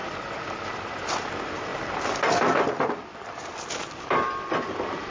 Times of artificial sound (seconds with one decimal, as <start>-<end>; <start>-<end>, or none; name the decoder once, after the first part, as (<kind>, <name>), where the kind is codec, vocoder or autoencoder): 0.0-0.6 (vocoder, BigVGAN v2); 3.1-4.6